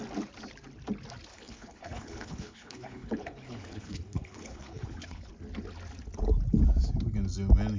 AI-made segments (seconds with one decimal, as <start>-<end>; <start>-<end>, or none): 1.3-5.3